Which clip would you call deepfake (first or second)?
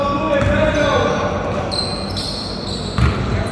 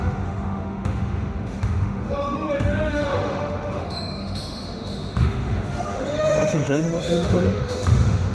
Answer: second